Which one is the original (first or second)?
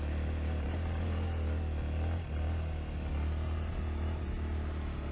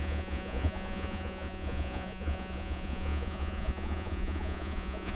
first